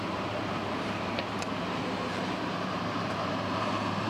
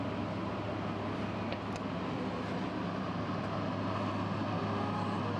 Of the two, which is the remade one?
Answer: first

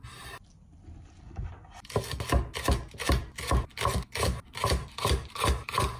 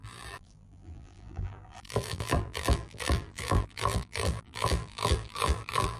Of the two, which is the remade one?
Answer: second